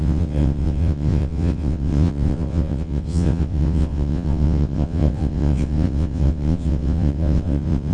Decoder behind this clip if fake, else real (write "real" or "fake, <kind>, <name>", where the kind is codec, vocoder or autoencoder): fake, vocoder, WaveNeXt